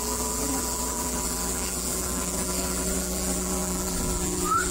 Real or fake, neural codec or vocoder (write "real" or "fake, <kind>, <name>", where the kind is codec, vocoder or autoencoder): fake, vocoder, BigVGAN v2